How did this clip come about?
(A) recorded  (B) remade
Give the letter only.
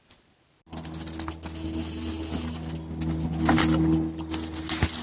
A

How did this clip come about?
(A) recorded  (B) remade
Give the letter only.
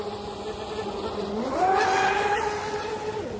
A